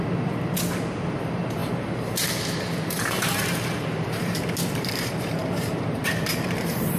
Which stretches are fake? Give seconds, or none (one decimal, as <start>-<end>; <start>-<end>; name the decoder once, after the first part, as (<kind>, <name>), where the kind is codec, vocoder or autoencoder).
0.0-7.0 (vocoder, BigVGAN v2)